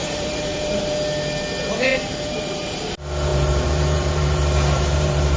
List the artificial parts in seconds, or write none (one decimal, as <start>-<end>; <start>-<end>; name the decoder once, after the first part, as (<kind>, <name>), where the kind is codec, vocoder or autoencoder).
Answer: 0.0-0.8 (vocoder, BigVGAN v2); 1.9-2.7; 3.3-5.4